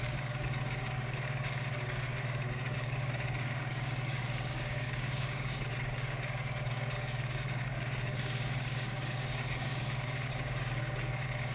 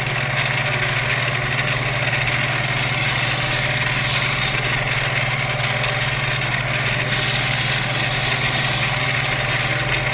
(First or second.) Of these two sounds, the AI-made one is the first